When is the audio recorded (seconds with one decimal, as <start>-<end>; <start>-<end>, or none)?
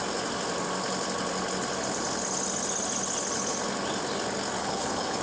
0.0-4.6